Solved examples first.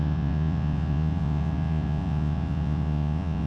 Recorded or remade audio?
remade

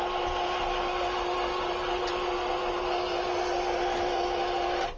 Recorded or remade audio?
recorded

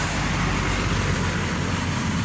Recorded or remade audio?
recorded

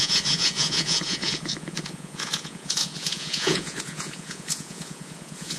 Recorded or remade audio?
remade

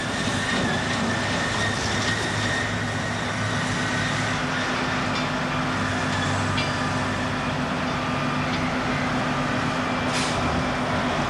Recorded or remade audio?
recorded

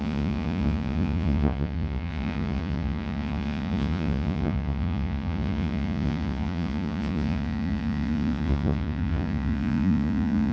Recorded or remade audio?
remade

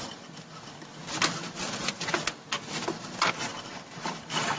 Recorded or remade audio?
recorded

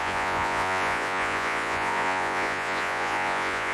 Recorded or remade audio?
remade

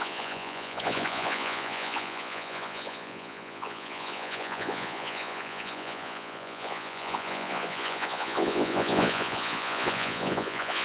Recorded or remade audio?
remade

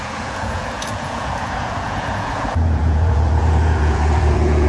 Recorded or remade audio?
remade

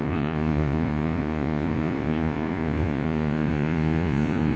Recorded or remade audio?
remade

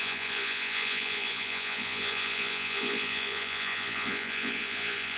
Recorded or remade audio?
remade